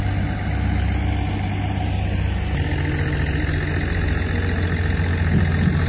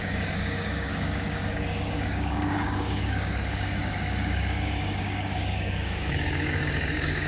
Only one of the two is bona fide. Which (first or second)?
first